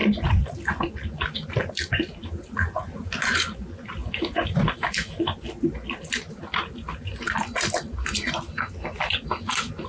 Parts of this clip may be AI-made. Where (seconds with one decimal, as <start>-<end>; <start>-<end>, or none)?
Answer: 4.0-4.6